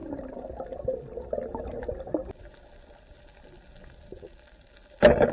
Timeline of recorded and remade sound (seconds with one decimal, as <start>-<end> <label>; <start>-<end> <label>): 0.0-5.3 recorded